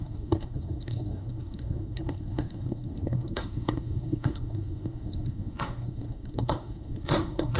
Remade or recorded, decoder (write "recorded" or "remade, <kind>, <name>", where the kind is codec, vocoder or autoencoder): remade, codec, SNAC